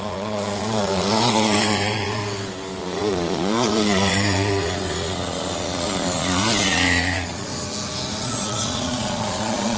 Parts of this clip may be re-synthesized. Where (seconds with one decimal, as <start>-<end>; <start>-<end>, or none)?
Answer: 0.0-2.2; 2.8-7.5; 8.2-9.8